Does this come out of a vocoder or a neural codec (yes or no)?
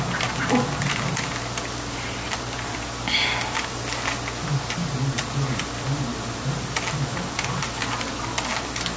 no